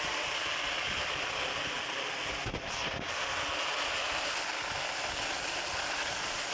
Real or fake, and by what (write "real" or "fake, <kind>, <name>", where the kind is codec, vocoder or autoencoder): real